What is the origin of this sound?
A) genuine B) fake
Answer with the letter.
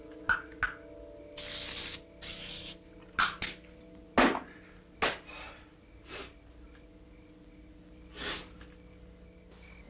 A